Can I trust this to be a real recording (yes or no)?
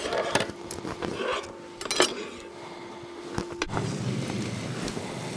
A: yes